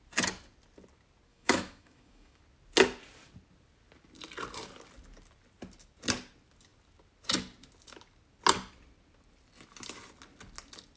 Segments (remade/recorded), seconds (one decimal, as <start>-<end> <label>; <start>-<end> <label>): 0.0-1.3 recorded; 1.3-2.4 remade; 2.4-11.0 recorded